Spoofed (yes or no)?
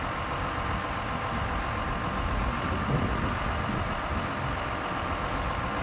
no